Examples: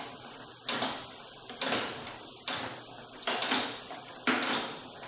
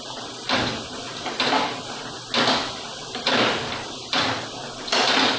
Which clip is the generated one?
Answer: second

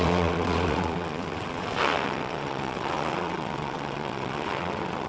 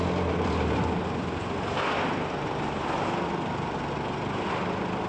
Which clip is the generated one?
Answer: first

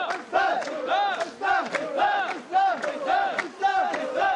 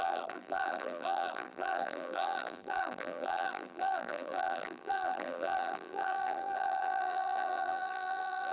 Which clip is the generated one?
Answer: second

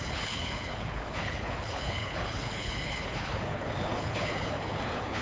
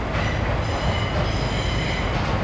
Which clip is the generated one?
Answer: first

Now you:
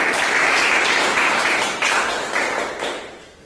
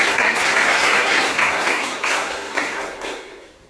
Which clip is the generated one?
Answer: second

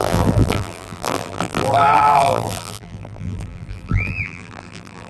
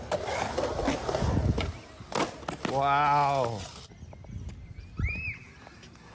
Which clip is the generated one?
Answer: first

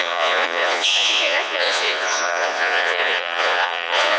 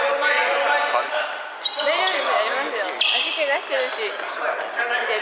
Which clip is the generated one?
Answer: first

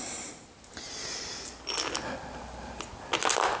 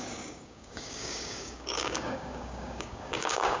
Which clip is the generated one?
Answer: second